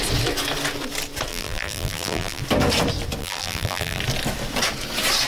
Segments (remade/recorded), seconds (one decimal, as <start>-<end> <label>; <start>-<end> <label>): 0.0-1.3 recorded; 1.3-2.4 remade; 2.4-3.2 recorded; 3.2-4.0 remade; 4.0-5.3 recorded